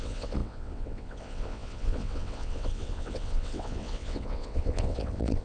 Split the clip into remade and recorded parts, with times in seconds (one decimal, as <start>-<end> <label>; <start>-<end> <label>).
0.0-5.4 remade